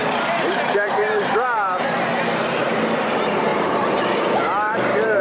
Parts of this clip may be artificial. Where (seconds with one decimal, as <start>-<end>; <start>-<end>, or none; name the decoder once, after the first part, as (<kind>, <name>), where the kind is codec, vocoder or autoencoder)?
0.0-2.1 (vocoder, BigVGAN v2); 2.6-5.2